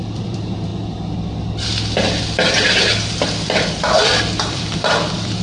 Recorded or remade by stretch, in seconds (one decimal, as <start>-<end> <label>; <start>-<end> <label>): 0.0-0.7 remade; 0.7-3.9 recorded; 3.9-5.4 remade